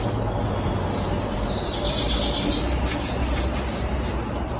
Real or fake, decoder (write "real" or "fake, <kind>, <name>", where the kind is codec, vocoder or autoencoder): real